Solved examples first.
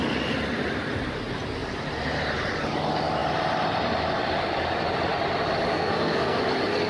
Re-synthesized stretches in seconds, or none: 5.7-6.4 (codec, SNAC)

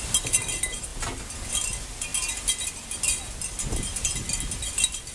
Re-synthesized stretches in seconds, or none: none

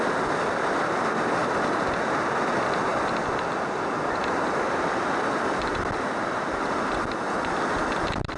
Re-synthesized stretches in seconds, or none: none

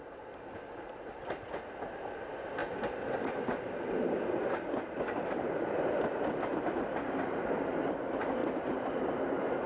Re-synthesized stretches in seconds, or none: none

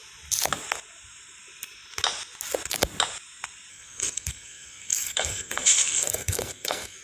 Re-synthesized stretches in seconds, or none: 3.7-7.0 (codec, SNAC)

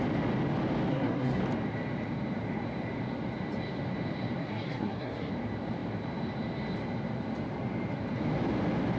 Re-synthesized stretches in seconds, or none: 0.9-1.4 (codec, SNAC); 4.4-5.3

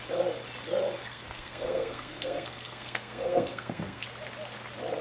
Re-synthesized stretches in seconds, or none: 1.0-4.0 (codec, SNAC)

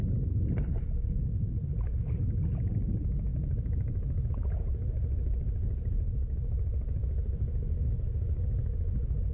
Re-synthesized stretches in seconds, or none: none